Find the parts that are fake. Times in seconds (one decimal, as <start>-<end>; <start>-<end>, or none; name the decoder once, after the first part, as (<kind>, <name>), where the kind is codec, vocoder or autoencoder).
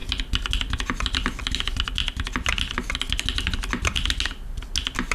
none